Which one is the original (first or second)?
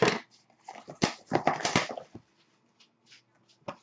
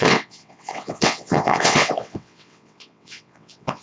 first